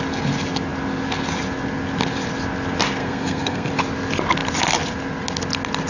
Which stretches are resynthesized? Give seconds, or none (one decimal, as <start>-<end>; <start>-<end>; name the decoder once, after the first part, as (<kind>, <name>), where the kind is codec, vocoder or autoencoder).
3.0-3.7 (codec, SNAC)